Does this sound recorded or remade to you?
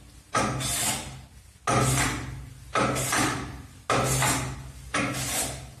recorded